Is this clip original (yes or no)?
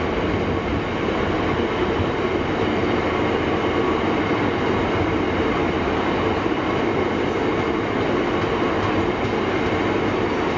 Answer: yes